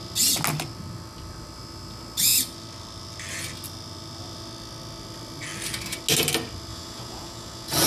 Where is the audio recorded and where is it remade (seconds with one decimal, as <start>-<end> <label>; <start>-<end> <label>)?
0.0-6.7 recorded; 6.7-7.9 remade